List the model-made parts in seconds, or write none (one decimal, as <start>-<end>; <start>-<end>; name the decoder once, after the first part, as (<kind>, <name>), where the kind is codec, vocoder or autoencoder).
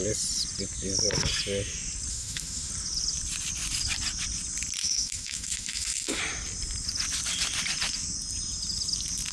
2.1-2.7 (autoencoder, DAC-VAE); 4.8-6.2